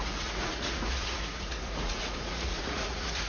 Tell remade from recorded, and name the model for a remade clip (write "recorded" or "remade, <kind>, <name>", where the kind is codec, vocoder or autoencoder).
remade, vocoder, Vocos